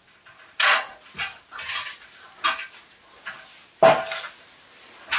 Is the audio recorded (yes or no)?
yes